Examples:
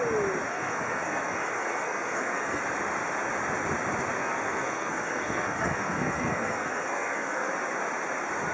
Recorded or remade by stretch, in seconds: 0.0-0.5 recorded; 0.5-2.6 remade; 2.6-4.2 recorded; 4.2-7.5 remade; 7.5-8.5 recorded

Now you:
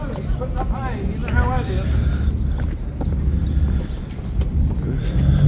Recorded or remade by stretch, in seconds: 0.0-5.5 recorded

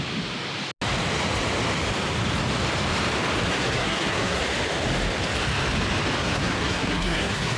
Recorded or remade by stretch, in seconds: 0.0-3.5 recorded; 3.5-4.4 remade; 4.4-6.2 recorded; 6.2-7.6 remade

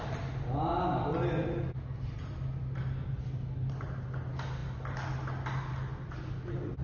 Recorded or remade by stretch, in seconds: 0.0-6.8 recorded

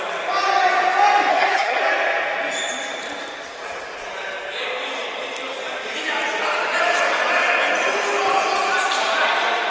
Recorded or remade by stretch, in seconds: 0.0-1.3 recorded; 1.3-1.8 remade; 1.8-9.7 recorded

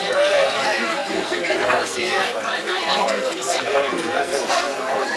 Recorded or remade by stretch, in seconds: 0.0-5.2 remade